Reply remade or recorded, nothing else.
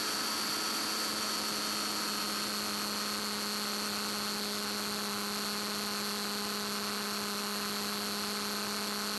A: recorded